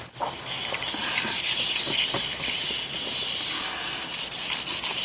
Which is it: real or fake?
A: real